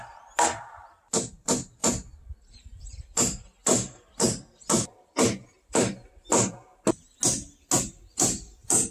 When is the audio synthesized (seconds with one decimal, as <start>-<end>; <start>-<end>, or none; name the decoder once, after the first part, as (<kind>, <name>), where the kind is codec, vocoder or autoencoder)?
0.0-6.7 (vocoder, BigVGAN v2); 7.8-8.9